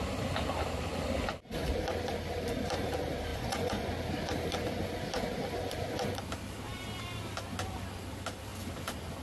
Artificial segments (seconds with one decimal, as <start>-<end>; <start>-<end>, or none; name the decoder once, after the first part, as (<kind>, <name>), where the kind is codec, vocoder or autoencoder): 3.3-3.9 (vocoder, Vocos)